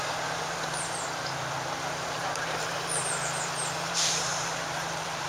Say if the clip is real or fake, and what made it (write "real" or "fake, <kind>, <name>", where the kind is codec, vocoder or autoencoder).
fake, vocoder, BigVGAN v2